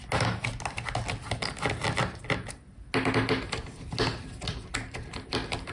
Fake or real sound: real